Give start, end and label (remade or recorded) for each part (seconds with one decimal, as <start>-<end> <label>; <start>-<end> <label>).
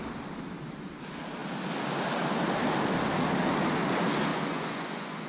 0.0-4.3 recorded; 4.3-5.3 remade